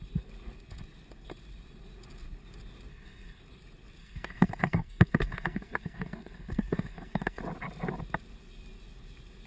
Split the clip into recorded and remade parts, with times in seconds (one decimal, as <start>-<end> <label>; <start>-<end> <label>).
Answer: 0.0-2.9 recorded; 2.9-3.4 remade; 3.4-4.0 recorded; 4.0-7.4 remade; 7.4-9.5 recorded